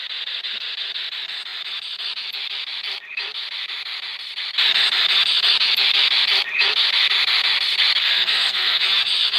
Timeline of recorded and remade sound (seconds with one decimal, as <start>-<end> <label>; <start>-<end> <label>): 0.0-8.0 recorded; 8.0-8.8 remade; 8.8-9.4 recorded

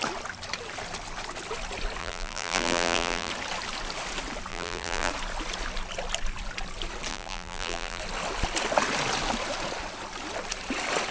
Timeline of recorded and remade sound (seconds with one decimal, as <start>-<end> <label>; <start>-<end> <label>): 0.0-2.0 recorded; 2.0-3.3 remade; 3.3-4.5 recorded; 4.5-5.1 remade; 5.1-7.1 recorded; 7.1-8.0 remade; 8.0-11.1 recorded

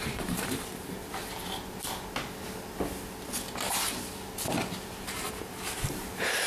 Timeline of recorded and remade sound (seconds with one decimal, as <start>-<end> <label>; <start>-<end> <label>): 0.0-1.0 remade; 1.0-4.9 recorded; 4.9-6.5 remade

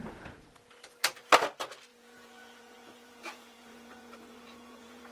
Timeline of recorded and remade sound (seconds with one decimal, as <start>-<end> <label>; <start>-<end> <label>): 0.0-0.7 remade; 0.7-1.9 recorded; 1.9-5.1 remade

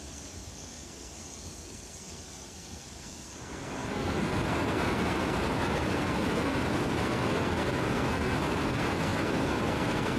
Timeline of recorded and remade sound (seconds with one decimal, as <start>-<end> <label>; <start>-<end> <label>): 0.0-10.2 remade

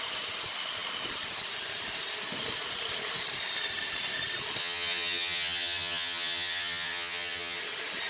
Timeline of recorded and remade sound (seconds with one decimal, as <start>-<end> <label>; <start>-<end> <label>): 0.0-4.6 recorded; 4.6-7.6 remade; 7.6-8.1 recorded

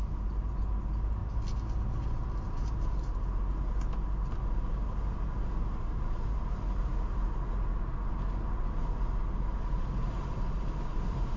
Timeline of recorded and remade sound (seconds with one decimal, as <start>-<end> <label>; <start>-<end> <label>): 0.0-11.4 recorded